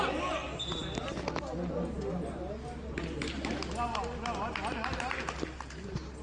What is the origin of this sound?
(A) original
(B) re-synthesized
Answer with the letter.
A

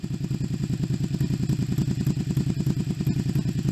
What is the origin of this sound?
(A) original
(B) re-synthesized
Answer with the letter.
A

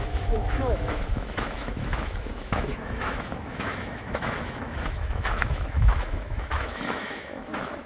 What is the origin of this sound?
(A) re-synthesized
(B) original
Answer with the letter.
A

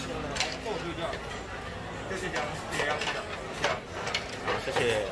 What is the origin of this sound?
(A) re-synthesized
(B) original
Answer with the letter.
B